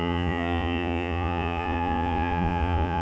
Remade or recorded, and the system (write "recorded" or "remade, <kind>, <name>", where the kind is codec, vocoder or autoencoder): remade, vocoder, Vocos